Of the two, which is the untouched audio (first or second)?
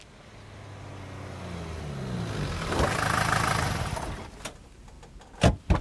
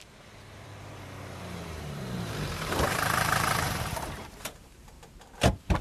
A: first